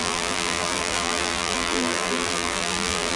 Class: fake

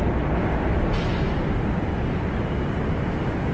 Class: real